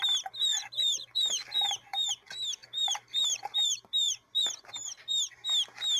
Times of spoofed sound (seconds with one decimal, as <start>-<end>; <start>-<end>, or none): 0.4-2.1; 2.6-5.3